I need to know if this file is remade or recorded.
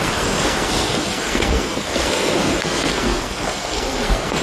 remade